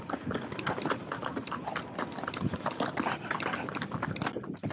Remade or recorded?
recorded